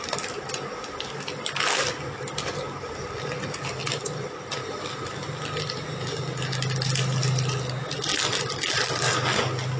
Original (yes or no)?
yes